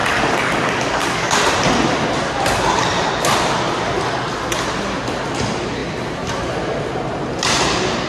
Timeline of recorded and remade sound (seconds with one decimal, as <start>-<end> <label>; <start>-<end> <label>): 0.0-1.4 remade; 1.4-8.1 recorded

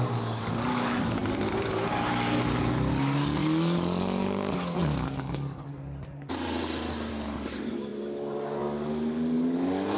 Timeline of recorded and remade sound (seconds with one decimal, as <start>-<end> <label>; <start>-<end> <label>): 0.0-3.4 remade; 3.4-4.0 recorded; 4.0-5.7 remade; 5.7-7.1 recorded; 7.1-10.0 remade

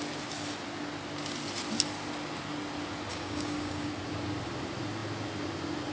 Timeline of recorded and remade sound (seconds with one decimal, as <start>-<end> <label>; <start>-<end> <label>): 0.0-3.1 recorded; 3.1-3.9 remade; 3.9-5.9 recorded

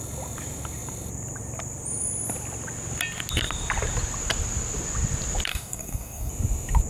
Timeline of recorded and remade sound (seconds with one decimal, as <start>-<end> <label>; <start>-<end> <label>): 0.0-5.5 recorded; 5.5-6.3 remade; 6.3-6.9 recorded

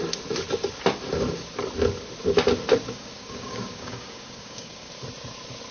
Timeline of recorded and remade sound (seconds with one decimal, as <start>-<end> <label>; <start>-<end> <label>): 0.0-2.8 recorded; 2.8-4.9 remade; 4.9-5.7 recorded

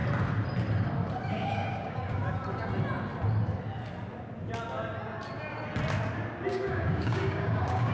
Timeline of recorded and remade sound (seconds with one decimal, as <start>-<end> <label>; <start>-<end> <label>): 0.0-1.3 recorded; 1.3-2.2 remade; 2.2-6.5 recorded; 6.5-7.9 remade

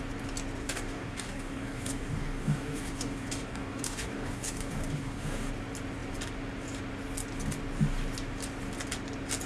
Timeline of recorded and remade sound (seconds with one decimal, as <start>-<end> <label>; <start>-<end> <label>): 0.0-0.6 recorded; 0.6-5.5 remade; 5.5-9.5 recorded